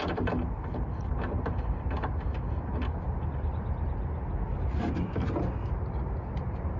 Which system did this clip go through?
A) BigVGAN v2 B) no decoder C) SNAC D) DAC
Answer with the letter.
B